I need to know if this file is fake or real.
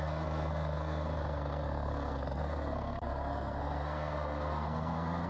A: fake